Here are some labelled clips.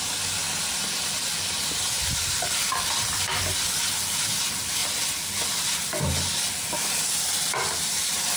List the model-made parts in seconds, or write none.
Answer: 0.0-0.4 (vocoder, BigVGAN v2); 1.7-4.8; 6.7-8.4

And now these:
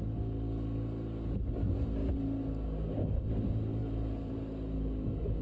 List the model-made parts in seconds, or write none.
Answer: 3.8-4.3 (vocoder, BigVGAN v2)